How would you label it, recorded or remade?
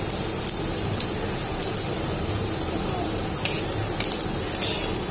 recorded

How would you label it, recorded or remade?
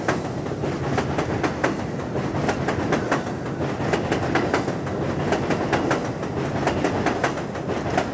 recorded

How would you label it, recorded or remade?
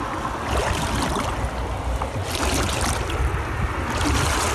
recorded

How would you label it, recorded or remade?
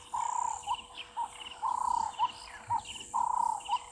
recorded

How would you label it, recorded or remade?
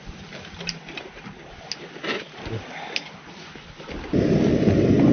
recorded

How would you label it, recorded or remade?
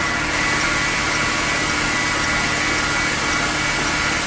recorded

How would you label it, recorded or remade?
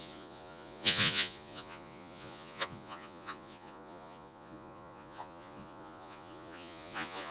remade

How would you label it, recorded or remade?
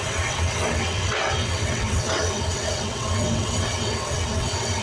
remade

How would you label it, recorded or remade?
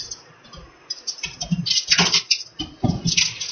recorded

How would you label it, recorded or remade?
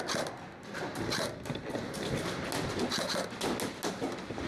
recorded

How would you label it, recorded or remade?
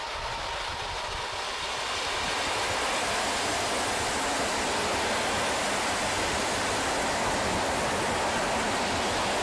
recorded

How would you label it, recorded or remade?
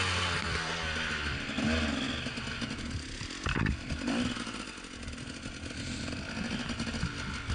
recorded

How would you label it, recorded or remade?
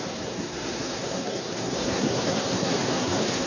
remade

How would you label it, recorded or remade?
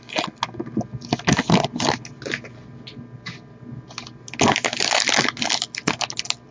recorded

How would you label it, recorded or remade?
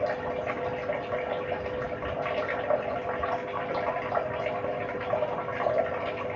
recorded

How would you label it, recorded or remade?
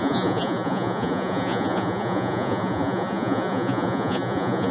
remade